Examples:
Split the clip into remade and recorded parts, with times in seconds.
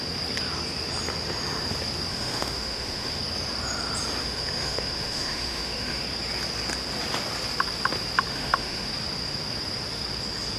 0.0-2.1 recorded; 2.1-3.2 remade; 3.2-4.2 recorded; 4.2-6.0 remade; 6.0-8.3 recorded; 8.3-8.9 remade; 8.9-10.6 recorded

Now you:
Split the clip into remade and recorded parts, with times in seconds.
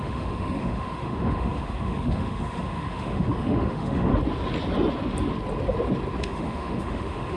0.0-4.1 remade; 4.1-6.2 recorded; 6.2-7.4 remade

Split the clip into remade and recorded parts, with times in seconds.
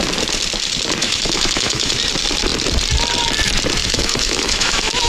0.0-1.0 recorded; 1.0-1.9 remade; 1.9-3.8 recorded; 3.8-5.1 remade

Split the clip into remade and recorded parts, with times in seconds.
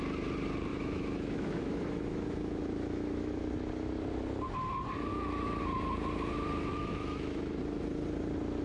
0.0-0.7 recorded; 0.7-3.4 remade; 3.4-5.1 recorded; 5.1-5.6 remade; 5.6-6.7 recorded; 6.7-7.6 remade; 7.6-8.6 recorded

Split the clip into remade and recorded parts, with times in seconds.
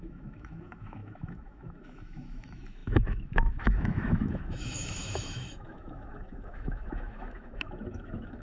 0.0-8.4 remade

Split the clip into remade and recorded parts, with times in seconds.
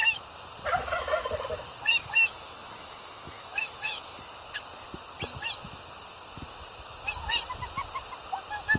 0.0-1.9 recorded; 1.9-4.2 remade; 4.2-8.8 recorded